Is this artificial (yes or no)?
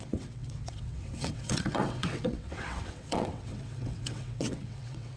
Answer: yes